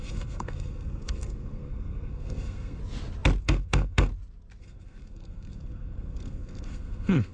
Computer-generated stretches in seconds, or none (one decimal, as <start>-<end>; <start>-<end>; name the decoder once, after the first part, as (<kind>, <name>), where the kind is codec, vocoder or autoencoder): 0.0-2.8 (codec, SNAC); 3.4-4.1; 4.6-7.3